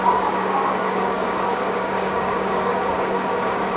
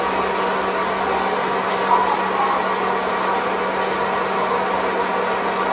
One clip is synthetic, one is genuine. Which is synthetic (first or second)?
first